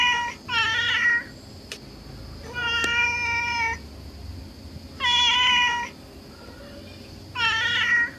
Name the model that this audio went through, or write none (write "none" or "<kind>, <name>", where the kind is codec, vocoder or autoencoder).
none